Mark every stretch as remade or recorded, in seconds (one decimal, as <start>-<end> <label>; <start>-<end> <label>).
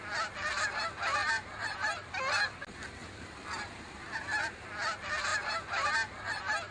0.0-1.2 recorded; 1.2-2.1 remade; 2.1-5.3 recorded; 5.3-5.9 remade; 5.9-6.7 recorded